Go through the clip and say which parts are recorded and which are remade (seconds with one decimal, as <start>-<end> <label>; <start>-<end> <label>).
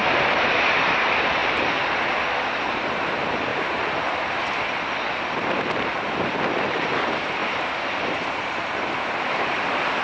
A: 0.0-0.6 recorded; 0.6-10.0 remade